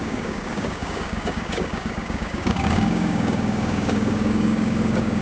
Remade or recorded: remade